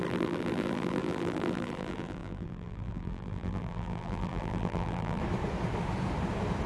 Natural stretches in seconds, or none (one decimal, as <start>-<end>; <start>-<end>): 5.2-6.7